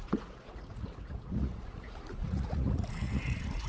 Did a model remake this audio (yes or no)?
yes